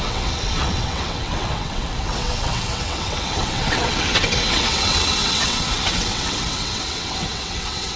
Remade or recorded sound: remade